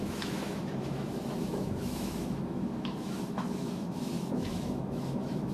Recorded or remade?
remade